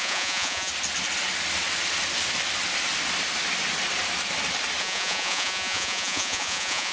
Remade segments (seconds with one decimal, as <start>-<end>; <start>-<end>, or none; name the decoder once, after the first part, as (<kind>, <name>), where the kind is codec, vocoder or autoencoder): 0.0-0.7 (vocoder, Vocos); 4.8-6.9